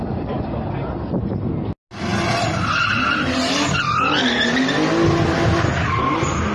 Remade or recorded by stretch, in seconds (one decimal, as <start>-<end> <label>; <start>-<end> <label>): 0.0-6.5 recorded